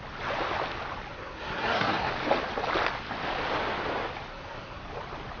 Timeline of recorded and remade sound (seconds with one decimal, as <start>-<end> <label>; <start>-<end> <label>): 0.0-1.1 recorded; 1.1-2.1 remade; 2.1-4.3 recorded; 4.3-4.8 remade; 4.8-5.4 recorded